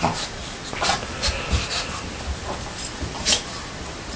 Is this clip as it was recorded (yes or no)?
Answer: yes